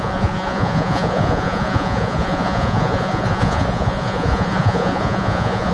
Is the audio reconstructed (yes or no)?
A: yes